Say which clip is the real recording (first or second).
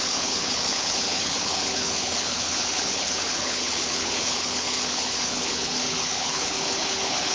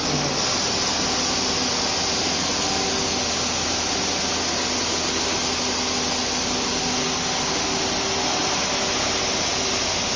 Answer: second